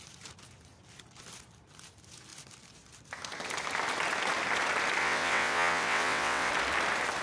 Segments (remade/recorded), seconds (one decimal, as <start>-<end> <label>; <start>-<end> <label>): 0.0-5.0 recorded; 5.0-6.5 remade; 6.5-7.2 recorded